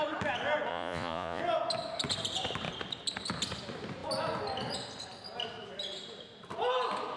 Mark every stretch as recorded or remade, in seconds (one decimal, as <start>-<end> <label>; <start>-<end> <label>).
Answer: 0.0-0.7 recorded; 0.7-1.4 remade; 1.4-7.2 recorded